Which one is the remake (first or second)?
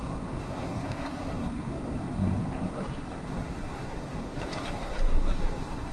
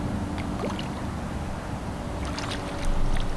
first